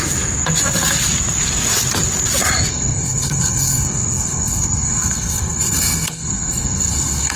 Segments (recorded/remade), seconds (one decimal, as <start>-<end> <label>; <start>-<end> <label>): 0.0-2.7 recorded; 2.7-7.4 remade